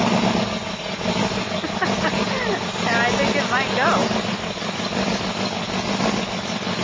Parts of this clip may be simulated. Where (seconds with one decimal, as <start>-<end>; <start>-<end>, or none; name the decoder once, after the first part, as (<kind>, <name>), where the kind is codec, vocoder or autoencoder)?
none